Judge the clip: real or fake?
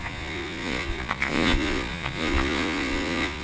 fake